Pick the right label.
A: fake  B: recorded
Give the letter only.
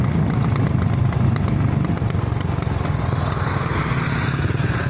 B